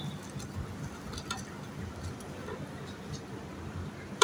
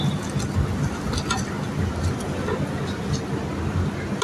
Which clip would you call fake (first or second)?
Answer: first